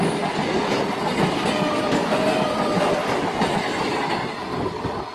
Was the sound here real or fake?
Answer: real